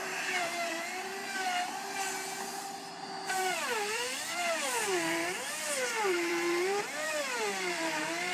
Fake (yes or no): yes